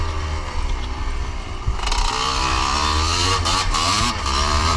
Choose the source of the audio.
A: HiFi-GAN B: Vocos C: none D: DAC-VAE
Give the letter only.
C